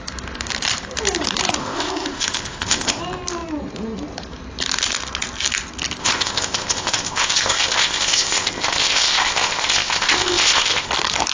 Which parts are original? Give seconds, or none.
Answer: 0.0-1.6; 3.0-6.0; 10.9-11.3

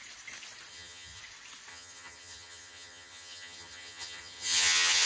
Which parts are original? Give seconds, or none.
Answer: 0.0-0.7; 1.2-1.7